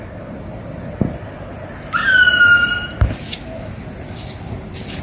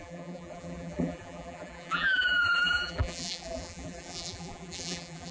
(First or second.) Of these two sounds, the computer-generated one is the second